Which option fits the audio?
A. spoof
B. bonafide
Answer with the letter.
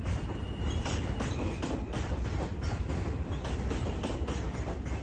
A